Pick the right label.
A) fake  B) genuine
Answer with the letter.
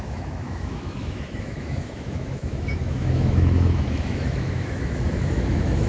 A